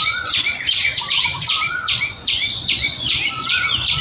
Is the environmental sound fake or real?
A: fake